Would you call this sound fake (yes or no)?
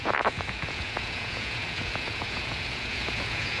yes